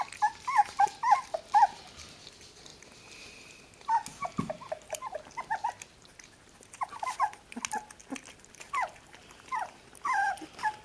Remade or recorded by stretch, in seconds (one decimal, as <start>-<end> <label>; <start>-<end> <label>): 0.0-10.8 recorded